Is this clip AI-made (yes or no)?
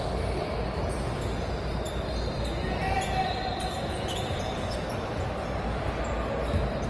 no